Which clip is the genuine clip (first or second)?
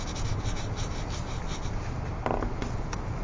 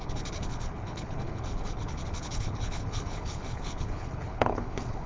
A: first